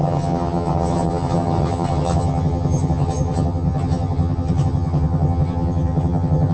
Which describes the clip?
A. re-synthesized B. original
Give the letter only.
A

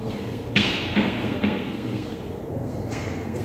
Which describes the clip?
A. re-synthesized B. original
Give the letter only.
A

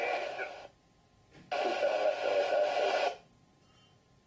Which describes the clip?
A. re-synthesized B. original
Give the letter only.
B